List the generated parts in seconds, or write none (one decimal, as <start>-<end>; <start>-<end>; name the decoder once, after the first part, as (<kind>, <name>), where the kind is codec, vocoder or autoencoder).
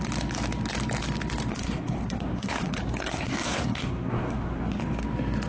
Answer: 1.5-4.8 (codec, SNAC)